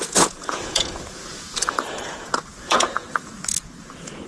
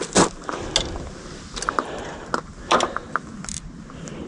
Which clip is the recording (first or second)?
second